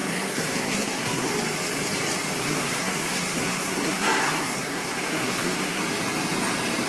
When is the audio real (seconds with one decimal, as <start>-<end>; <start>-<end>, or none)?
1.3-2.4; 5.8-6.9